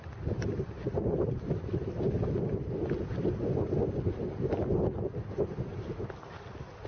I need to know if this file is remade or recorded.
recorded